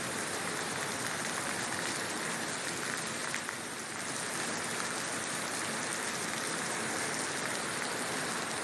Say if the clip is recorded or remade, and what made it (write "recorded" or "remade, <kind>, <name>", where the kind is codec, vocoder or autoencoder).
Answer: remade, vocoder, BigVGAN v2